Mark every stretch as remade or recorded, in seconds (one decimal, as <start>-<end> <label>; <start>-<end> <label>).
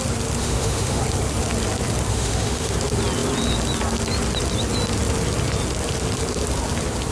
0.0-0.4 recorded; 0.4-1.0 remade; 1.0-2.1 recorded; 2.1-2.7 remade; 2.7-7.1 recorded